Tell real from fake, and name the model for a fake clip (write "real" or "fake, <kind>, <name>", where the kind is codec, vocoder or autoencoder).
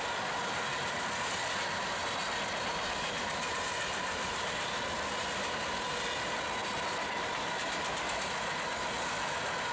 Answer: real